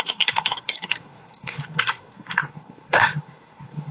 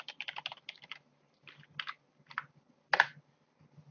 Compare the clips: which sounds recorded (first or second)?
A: second